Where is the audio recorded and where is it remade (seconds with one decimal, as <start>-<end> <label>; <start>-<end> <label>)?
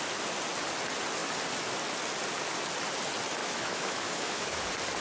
0.0-3.4 recorded; 3.4-4.6 remade; 4.6-5.0 recorded